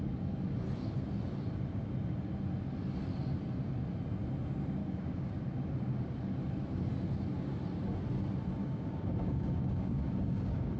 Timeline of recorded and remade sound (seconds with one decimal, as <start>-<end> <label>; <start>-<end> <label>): 0.0-4.8 recorded; 4.8-5.4 remade; 5.4-8.6 recorded; 8.6-10.8 remade